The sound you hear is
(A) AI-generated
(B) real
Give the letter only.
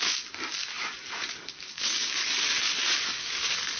A